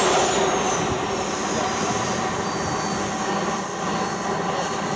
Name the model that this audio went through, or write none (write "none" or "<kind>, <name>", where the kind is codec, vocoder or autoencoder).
none